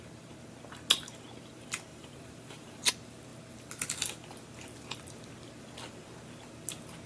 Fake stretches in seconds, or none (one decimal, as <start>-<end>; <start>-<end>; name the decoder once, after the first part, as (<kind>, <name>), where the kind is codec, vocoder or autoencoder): 1.9-2.9 (vocoder, BigVGAN v2)